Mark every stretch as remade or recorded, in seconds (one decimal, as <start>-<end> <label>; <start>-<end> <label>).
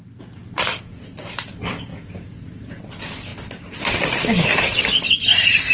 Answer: 0.0-0.7 recorded; 0.7-1.5 remade; 1.5-1.9 recorded; 1.9-2.8 remade; 2.8-5.7 recorded